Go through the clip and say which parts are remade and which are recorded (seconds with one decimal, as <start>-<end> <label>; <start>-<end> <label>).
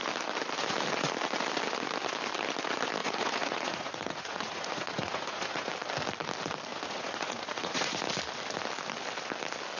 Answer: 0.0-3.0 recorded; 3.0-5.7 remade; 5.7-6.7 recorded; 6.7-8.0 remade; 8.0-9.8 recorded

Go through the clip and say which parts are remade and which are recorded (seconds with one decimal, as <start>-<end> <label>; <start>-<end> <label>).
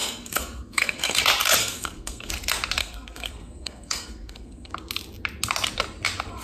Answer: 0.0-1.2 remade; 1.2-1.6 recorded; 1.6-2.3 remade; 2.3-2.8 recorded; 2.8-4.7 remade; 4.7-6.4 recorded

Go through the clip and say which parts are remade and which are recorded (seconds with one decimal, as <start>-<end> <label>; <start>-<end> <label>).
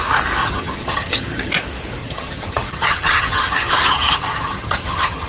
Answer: 0.0-0.4 recorded; 0.4-1.5 remade; 1.5-2.0 recorded; 2.0-5.3 remade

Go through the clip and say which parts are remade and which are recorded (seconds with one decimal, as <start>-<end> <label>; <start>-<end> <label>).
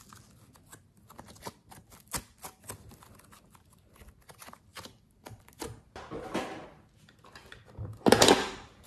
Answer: 0.0-4.7 recorded; 4.7-5.5 remade; 5.5-8.9 recorded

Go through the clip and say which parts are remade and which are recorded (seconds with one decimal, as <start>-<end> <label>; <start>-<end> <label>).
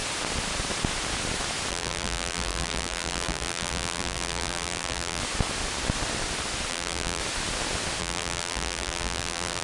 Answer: 0.0-1.7 recorded; 1.7-5.2 remade; 5.2-6.7 recorded; 6.7-7.2 remade; 7.2-8.0 recorded; 8.0-9.6 remade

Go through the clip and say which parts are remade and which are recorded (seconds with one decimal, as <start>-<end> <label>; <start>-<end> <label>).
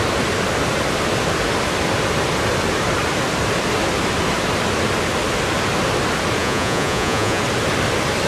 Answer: 0.0-6.4 recorded; 6.4-7.4 remade; 7.4-8.3 recorded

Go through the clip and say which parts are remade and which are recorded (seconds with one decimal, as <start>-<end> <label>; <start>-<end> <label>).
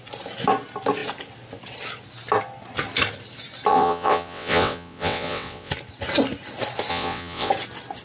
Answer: 0.0-3.7 recorded; 3.7-5.7 remade; 5.7-6.9 recorded; 6.9-7.5 remade; 7.5-8.0 recorded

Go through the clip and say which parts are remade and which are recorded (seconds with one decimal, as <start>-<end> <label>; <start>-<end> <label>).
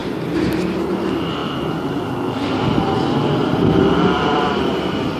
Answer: 0.0-5.2 recorded